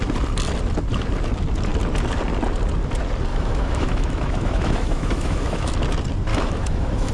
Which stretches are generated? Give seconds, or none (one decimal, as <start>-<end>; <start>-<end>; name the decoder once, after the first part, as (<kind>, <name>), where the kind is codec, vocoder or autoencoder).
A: 3.3-5.7 (autoencoder, DAC-VAE); 6.3-7.1